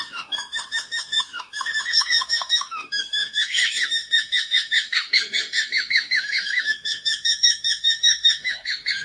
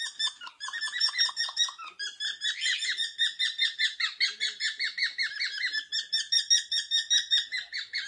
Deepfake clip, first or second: first